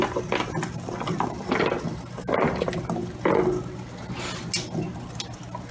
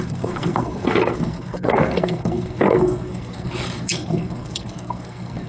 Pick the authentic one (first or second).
first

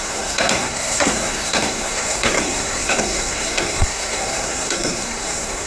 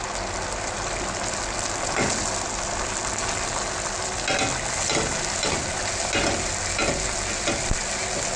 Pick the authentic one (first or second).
second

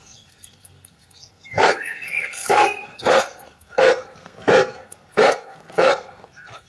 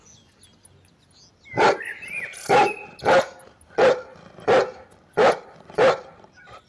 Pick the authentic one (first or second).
second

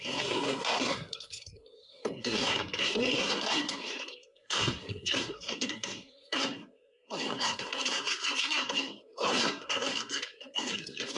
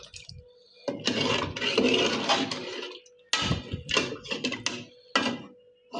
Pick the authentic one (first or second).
second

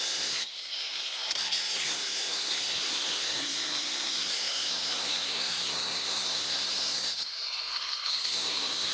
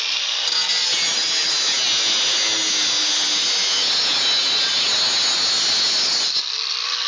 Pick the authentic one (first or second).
second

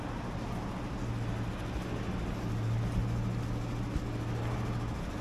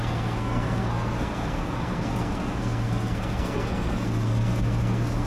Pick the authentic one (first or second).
first